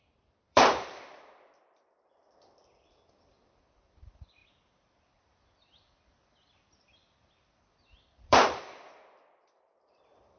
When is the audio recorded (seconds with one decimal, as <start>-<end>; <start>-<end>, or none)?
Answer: none